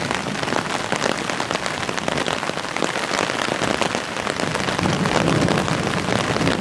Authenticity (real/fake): real